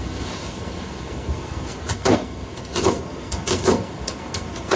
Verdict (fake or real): fake